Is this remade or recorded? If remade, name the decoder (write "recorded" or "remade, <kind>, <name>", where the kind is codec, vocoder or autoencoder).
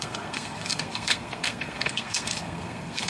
remade, codec, SNAC